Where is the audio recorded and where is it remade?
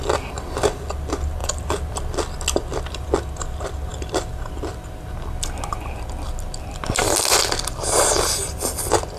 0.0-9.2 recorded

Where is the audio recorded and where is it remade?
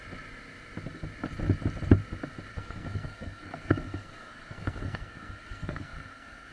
0.0-2.5 recorded; 2.5-6.5 remade